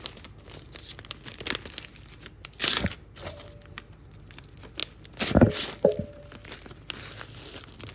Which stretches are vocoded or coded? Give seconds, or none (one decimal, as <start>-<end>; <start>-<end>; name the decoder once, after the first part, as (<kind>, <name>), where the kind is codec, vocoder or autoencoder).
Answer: none